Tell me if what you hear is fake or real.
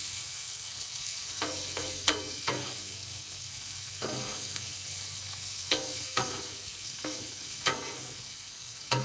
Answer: fake